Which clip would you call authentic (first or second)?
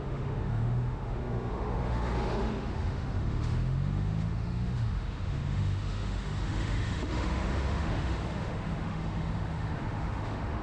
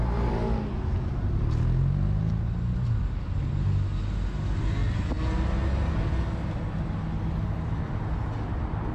second